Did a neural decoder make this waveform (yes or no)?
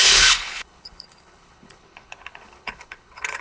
yes